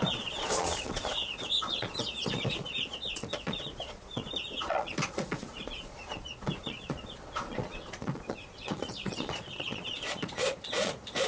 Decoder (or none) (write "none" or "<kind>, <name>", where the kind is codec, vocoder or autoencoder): vocoder, Vocos